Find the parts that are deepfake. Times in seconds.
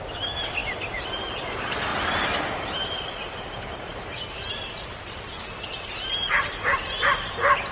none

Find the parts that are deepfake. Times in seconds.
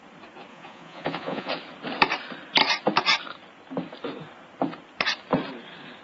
0.5-1.5 (vocoder, Vocos)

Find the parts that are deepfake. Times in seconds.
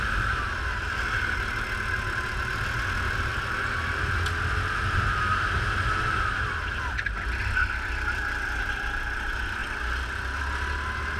none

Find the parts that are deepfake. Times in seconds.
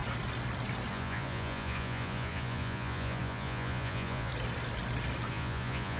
0.9-4.3 (vocoder, Vocos); 5.3-6.0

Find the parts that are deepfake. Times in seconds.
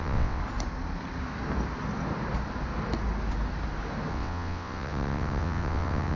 0.0-0.4 (vocoder, WaveNeXt); 4.1-6.2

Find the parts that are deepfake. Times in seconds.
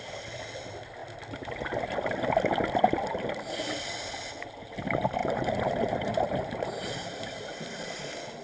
5.2-8.0 (vocoder, BigVGAN v2)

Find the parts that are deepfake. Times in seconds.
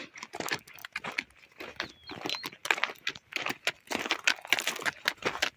none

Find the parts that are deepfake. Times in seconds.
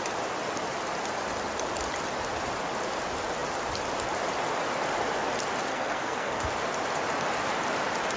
5.7-6.5 (codec, SNAC)